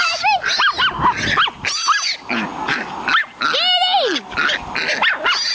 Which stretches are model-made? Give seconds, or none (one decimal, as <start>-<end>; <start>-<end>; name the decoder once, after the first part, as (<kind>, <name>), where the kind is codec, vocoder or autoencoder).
0.0-0.6 (vocoder, BigVGAN v2)